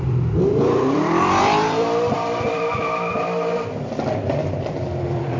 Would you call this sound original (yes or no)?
no